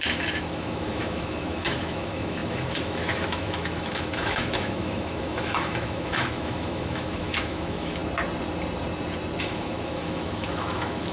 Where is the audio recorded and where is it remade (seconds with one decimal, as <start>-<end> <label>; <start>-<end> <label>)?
0.0-8.0 remade; 8.0-9.4 recorded; 9.4-11.1 remade